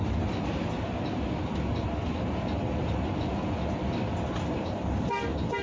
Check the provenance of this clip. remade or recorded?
recorded